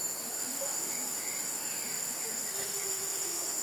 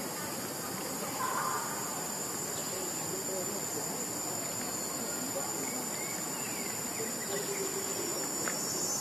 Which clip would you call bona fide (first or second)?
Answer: second